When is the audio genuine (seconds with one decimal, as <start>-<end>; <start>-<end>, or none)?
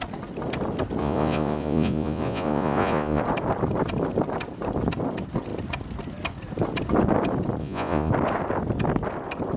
0.0-1.0; 3.2-7.6; 8.1-9.6